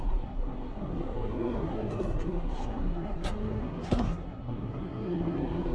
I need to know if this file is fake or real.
fake